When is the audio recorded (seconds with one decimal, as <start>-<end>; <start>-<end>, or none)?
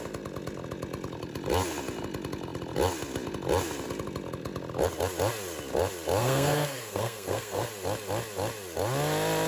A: 0.0-6.2; 7.7-9.5